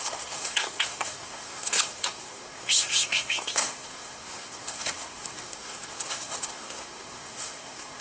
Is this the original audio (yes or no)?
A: no